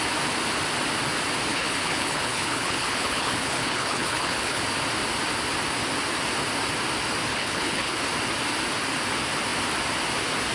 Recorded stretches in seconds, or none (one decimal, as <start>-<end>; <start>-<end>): 0.0-1.5; 4.6-7.3; 8.0-10.5